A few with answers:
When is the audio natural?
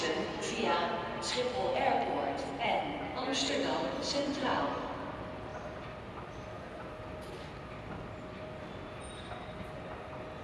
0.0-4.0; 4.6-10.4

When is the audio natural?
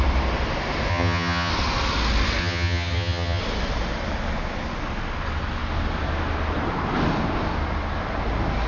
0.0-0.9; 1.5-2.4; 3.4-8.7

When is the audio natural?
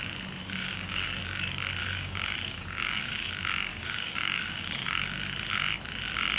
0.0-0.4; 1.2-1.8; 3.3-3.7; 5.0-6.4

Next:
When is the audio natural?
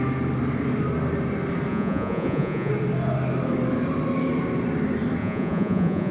0.0-1.7; 2.7-5.2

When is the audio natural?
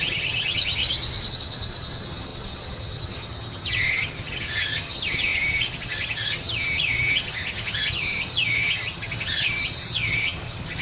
0.8-1.3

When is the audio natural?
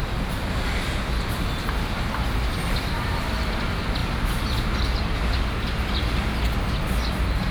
0.0-7.5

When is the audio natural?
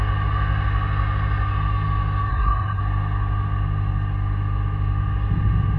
0.0-2.3; 2.8-5.8